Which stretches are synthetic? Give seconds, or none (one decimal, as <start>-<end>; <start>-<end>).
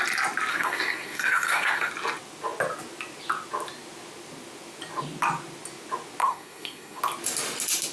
0.5-1.9; 6.2-7.0